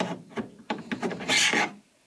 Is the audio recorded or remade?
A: recorded